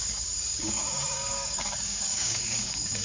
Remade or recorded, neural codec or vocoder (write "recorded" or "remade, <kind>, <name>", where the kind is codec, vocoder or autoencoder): remade, codec, DAC